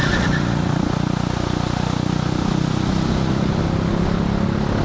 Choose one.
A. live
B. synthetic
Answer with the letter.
A